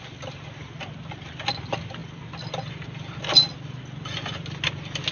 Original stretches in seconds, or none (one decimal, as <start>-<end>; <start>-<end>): 0.0-5.1